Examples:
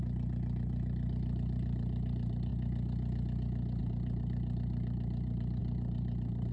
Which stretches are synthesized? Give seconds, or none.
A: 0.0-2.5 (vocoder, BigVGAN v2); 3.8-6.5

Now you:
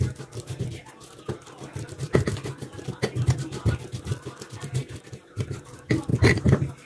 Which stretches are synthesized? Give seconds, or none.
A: 4.8-5.6 (vocoder, BigVGAN v2); 6.1-6.9